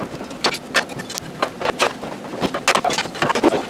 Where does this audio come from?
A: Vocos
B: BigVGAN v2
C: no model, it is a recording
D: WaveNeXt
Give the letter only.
C